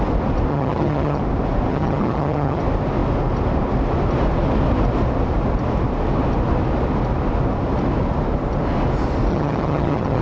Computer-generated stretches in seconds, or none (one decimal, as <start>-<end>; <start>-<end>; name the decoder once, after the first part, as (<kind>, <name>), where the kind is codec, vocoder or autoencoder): 0.5-1.2 (vocoder, HiFi-GAN); 1.7-2.6; 9.3-10.2